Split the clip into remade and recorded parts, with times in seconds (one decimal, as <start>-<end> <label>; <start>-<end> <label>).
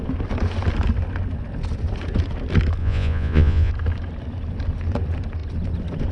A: 0.0-2.8 recorded; 2.8-3.7 remade; 3.7-6.1 recorded